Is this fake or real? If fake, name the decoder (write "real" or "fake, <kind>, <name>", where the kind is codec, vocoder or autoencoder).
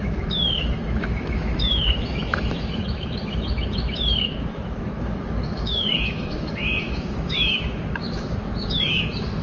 fake, autoencoder, DAC-VAE